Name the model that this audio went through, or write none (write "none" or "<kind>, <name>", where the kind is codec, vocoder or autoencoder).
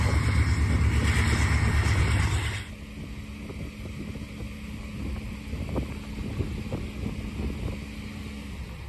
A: none